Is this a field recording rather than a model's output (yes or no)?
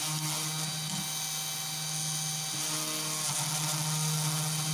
yes